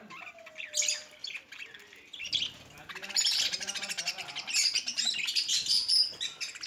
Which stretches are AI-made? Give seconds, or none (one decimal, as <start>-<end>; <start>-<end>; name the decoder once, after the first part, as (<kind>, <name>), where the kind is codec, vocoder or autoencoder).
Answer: none